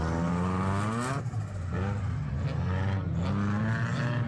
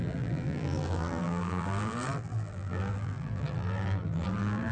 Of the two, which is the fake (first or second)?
second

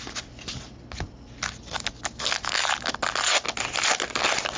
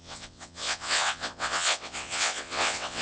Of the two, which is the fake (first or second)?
second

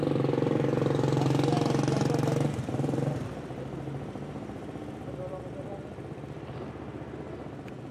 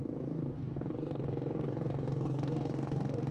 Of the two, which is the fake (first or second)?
second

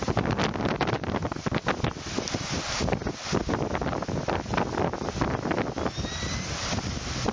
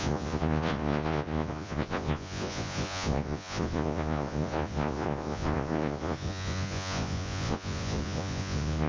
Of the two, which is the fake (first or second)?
second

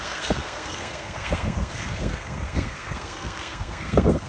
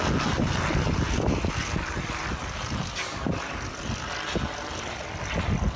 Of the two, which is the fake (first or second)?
first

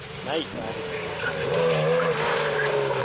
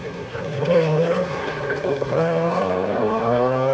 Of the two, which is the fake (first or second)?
second